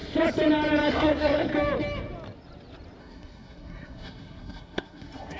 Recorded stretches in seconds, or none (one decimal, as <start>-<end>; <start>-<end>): 0.0-0.9; 1.5-3.0